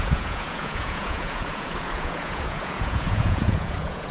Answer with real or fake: fake